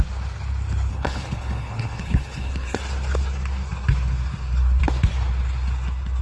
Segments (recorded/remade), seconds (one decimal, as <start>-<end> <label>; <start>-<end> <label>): 0.0-0.9 recorded; 0.9-2.8 remade; 2.8-6.2 recorded